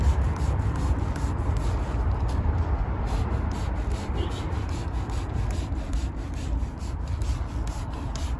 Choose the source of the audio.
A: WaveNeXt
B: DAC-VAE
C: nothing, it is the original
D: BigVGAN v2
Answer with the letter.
D